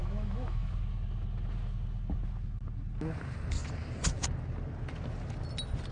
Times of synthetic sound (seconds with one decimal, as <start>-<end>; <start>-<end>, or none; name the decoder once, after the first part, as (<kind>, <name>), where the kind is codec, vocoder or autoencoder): 0.0-0.7 (autoencoder, DAC-VAE)